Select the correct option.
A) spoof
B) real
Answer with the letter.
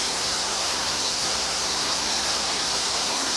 A